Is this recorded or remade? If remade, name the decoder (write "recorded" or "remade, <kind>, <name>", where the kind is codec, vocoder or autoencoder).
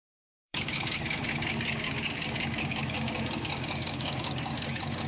remade, codec, DAC